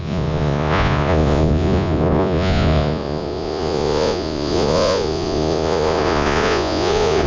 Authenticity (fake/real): fake